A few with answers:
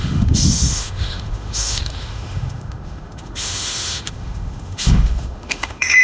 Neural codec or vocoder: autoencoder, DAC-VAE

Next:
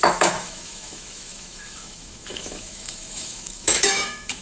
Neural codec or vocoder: autoencoder, DAC-VAE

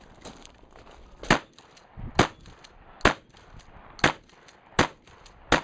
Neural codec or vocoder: none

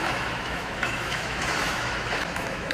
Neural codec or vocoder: autoencoder, DAC-VAE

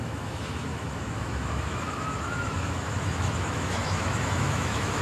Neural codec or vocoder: autoencoder, DAC-VAE